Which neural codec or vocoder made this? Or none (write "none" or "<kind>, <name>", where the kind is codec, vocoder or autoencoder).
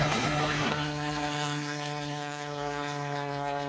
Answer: codec, SNAC